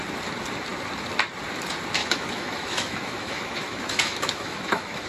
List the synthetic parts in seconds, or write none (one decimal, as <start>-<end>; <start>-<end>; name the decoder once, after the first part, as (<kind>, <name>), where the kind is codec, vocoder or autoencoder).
2.0-5.1 (autoencoder, DAC-VAE)